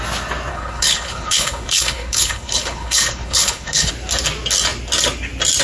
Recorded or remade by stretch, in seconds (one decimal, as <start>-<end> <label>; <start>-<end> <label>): 0.0-0.5 recorded; 0.5-3.9 remade; 3.9-5.6 recorded